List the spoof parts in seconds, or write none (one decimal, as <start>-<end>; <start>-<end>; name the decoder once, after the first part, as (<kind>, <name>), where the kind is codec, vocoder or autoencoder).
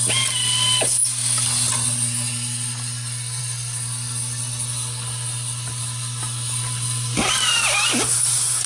none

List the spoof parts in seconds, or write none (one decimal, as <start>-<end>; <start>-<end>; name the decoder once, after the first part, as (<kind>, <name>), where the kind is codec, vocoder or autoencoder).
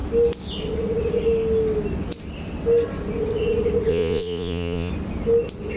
3.9-4.9 (vocoder, Vocos)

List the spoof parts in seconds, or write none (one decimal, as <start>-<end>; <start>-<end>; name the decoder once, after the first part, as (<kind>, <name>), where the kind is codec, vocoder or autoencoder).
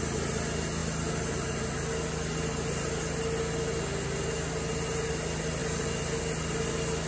none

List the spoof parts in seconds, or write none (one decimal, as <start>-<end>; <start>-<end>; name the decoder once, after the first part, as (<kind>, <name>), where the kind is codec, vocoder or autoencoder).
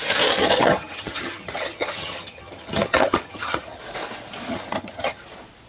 0.4-3.8 (vocoder, HiFi-GAN); 4.5-5.2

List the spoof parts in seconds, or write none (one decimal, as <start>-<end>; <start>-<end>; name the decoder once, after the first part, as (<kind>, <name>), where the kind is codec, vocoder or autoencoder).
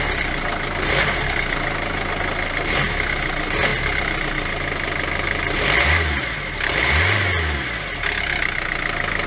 none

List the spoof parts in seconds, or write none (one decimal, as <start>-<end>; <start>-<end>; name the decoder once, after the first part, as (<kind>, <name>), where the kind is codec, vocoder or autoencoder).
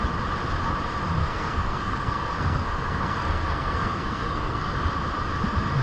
1.2-4.7 (codec, SNAC)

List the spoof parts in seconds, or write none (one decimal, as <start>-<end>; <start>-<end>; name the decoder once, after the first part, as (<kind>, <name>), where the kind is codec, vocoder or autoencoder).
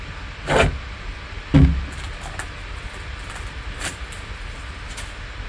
none